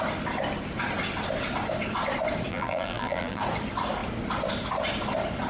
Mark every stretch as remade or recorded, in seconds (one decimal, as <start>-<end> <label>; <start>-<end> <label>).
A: 0.0-2.5 recorded; 2.5-3.4 remade; 3.4-5.5 recorded